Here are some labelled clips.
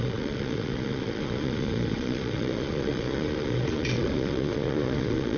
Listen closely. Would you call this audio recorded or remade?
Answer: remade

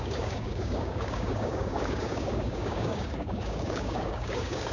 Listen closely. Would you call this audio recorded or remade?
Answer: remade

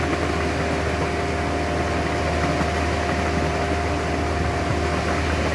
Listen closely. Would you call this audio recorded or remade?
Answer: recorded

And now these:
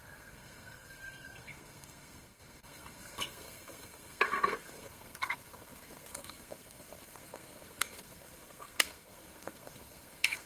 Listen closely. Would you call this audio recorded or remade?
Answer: remade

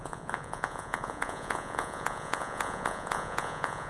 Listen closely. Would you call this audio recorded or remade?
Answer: remade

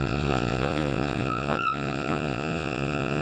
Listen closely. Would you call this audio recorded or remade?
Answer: remade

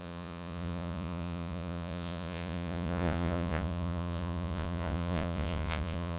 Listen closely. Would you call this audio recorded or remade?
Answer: remade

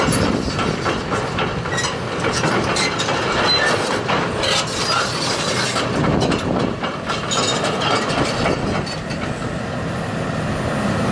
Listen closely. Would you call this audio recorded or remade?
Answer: recorded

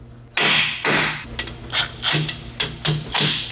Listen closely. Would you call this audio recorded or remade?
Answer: recorded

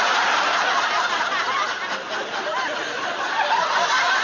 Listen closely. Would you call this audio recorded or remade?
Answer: recorded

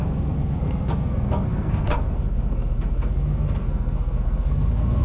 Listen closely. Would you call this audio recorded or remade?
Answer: remade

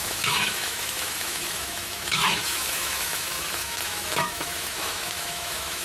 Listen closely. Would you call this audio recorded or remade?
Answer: remade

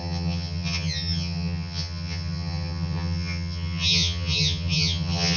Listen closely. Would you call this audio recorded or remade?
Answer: remade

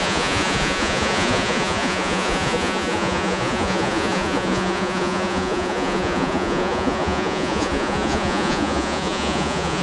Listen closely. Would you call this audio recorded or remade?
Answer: remade